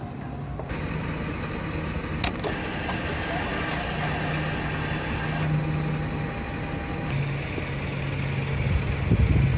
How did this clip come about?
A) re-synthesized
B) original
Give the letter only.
B